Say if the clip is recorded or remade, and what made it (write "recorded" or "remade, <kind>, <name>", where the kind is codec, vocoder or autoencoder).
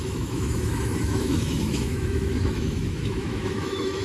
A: remade, autoencoder, DAC-VAE